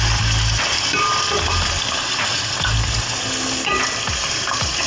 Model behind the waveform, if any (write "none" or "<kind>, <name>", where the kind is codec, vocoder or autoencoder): none